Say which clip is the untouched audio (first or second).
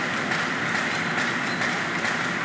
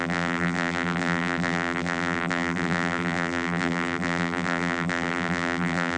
first